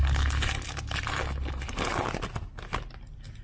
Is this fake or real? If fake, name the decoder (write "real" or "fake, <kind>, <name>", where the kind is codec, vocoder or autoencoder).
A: real